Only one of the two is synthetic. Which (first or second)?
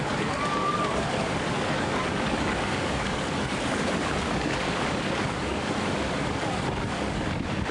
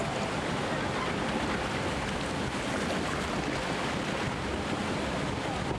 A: first